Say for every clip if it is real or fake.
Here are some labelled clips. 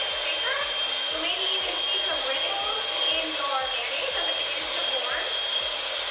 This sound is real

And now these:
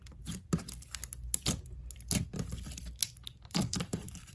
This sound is fake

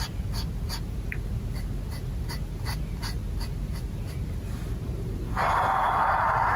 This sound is real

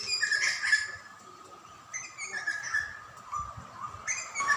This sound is real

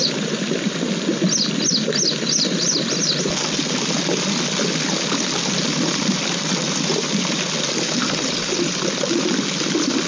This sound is real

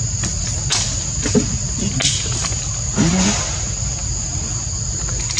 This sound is real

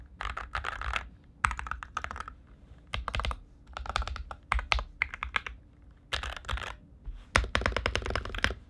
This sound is real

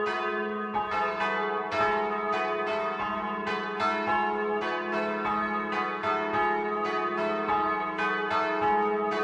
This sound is real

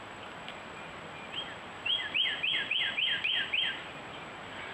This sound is fake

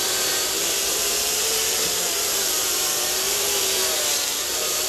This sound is fake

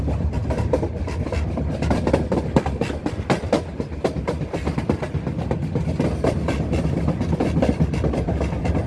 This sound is fake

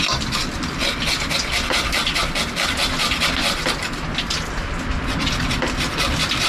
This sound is real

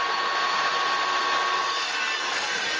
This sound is fake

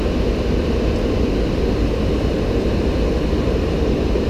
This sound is real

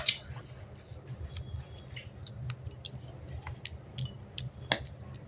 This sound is real